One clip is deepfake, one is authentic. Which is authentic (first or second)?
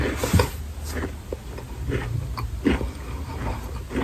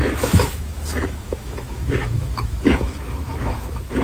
first